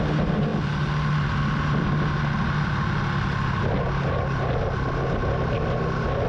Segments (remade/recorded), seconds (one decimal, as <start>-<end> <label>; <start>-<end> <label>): 0.0-6.3 recorded